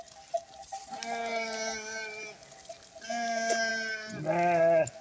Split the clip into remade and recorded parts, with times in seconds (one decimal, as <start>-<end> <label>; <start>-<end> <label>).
0.0-5.0 recorded